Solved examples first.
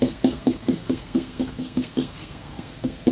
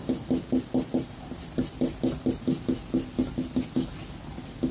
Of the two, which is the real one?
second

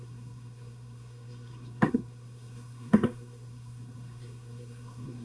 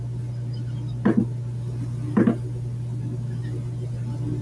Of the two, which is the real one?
second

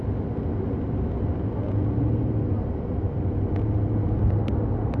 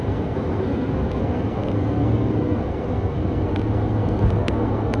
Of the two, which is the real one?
first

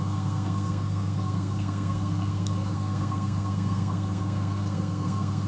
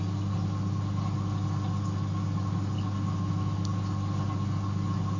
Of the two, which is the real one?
second